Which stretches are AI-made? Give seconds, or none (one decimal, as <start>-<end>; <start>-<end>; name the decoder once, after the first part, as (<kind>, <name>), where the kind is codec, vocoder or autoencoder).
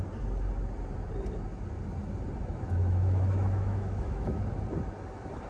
2.4-4.4 (autoencoder, DAC-VAE)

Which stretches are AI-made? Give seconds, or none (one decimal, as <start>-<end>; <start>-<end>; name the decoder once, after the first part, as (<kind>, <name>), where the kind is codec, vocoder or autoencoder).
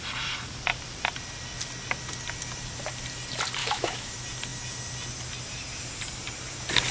3.6-4.1 (autoencoder, DAC-VAE)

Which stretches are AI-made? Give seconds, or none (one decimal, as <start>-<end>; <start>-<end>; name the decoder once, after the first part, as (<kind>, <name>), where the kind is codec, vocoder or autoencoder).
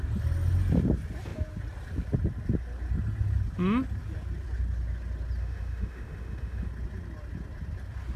5.4-6.7 (autoencoder, DAC-VAE)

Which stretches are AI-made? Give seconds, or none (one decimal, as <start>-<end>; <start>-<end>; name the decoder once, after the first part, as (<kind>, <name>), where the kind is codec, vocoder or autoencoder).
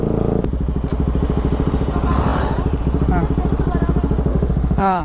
4.3-5.0 (autoencoder, DAC-VAE)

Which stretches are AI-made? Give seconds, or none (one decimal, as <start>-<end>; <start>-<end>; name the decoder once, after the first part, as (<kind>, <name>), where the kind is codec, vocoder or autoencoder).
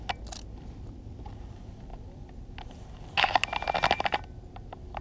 none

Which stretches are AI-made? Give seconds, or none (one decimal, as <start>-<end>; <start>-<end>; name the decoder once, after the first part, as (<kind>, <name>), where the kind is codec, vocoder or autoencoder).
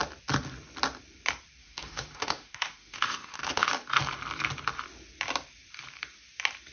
1.6-3.7 (autoencoder, DAC-VAE)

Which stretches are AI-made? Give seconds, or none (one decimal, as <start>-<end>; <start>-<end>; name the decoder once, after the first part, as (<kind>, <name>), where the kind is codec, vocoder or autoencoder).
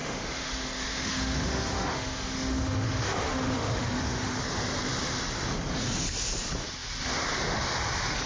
0.0-4.4 (autoencoder, DAC-VAE)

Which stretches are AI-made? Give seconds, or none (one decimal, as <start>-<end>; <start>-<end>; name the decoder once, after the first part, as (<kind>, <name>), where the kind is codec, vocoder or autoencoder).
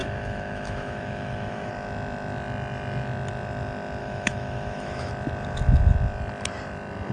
0.0-1.7 (autoencoder, DAC-VAE); 4.0-5.1